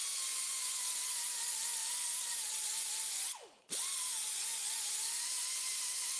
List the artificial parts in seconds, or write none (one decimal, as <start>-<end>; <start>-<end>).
0.0-6.2